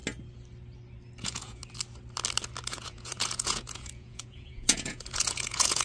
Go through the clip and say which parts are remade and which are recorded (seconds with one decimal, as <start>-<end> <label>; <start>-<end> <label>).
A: 0.0-1.2 recorded; 1.2-1.6 remade; 1.6-2.7 recorded; 2.7-5.8 remade